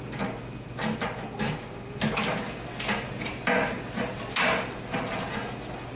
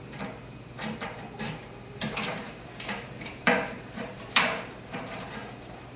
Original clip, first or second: first